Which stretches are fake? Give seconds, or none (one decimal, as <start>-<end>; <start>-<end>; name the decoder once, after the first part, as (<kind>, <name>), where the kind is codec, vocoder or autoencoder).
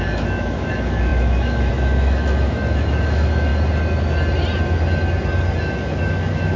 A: 0.0-3.5 (autoencoder, DAC-VAE); 5.6-6.6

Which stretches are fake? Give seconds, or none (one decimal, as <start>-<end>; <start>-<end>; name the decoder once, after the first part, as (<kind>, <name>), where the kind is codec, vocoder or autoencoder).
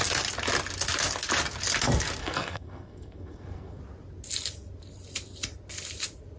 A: 2.2-3.8 (codec, SNAC)